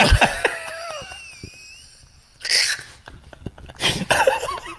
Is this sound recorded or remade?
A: recorded